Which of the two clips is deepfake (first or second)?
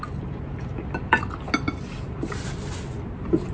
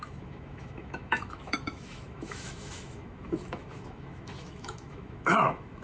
second